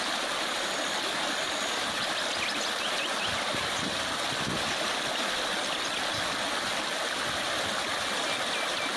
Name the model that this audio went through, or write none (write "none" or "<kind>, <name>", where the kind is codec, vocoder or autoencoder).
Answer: none